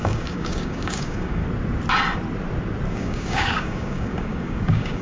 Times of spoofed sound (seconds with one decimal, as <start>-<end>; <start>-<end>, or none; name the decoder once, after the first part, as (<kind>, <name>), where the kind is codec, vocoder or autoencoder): 0.0-1.4 (codec, DAC); 2.9-5.0